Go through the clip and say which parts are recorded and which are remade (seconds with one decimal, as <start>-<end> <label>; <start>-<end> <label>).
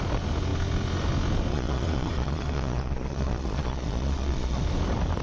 0.0-1.5 recorded; 1.5-4.6 remade; 4.6-5.2 recorded